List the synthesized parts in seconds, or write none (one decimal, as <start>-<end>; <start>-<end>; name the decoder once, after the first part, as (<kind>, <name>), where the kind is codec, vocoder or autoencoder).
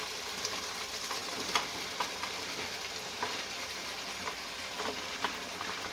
none